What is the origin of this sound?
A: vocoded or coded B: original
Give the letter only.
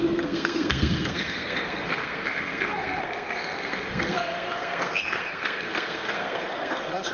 A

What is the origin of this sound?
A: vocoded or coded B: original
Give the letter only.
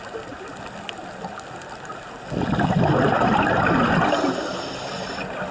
B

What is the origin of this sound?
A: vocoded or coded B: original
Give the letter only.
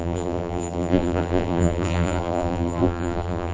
A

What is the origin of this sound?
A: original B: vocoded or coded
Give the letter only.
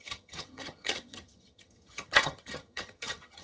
B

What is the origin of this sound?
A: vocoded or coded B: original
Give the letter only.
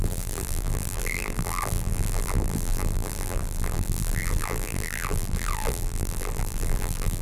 A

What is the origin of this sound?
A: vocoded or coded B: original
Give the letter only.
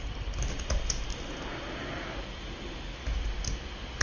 B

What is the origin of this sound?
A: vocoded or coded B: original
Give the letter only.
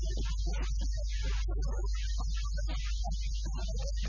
B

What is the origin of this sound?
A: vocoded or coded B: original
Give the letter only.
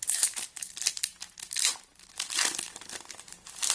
B